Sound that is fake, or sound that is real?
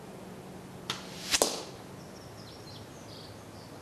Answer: real